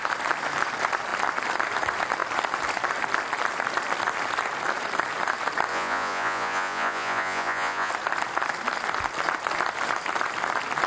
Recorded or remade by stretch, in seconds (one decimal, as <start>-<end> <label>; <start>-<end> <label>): 0.0-5.7 recorded; 5.7-7.9 remade; 7.9-10.9 recorded